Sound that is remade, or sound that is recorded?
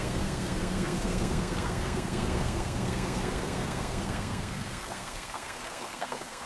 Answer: remade